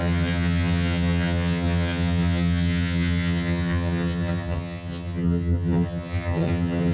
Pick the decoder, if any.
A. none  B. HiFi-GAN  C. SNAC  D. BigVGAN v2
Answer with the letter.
B